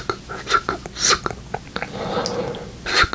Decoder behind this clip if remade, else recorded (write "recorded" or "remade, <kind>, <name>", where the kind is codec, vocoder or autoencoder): recorded